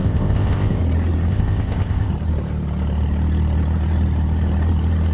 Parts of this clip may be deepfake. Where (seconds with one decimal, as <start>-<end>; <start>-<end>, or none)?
0.0-0.8; 1.3-2.1